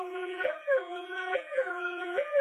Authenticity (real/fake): fake